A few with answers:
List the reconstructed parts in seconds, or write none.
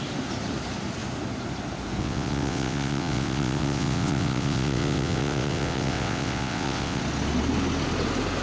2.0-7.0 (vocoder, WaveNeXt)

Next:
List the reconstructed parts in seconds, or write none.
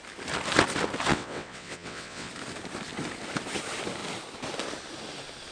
1.1-2.3 (vocoder, WaveNeXt)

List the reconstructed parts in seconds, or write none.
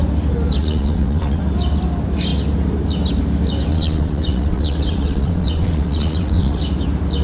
0.6-1.4 (vocoder, WaveNeXt); 3.7-6.6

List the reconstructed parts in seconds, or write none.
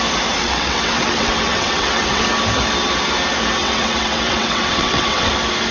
0.4-2.2 (vocoder, WaveNeXt); 3.6-5.3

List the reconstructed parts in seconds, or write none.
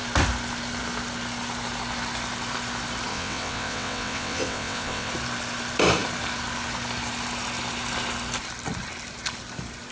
3.1-5.1 (vocoder, WaveNeXt)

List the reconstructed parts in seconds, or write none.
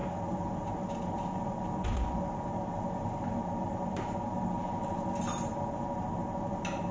none